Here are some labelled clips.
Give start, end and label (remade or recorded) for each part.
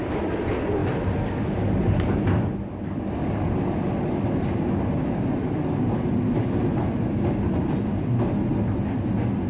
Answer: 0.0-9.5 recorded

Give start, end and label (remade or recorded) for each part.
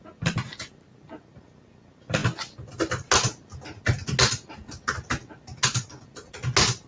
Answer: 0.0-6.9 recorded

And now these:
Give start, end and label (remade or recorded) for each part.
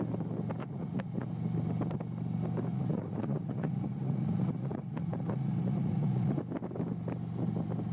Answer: 0.0-0.6 recorded; 0.6-1.3 remade; 1.3-2.7 recorded; 2.7-6.4 remade; 6.4-7.9 recorded